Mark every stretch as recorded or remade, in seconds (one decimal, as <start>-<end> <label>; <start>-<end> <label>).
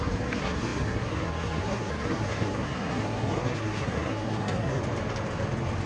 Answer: 0.0-4.8 remade; 4.8-5.9 recorded